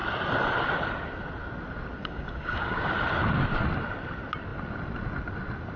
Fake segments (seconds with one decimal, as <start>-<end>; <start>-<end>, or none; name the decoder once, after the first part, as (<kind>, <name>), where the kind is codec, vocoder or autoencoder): 2.0-2.9 (codec, DAC)